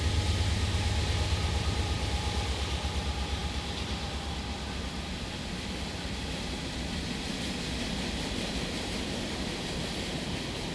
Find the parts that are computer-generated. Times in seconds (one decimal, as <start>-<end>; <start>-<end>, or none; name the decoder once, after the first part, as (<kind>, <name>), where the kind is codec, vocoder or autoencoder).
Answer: none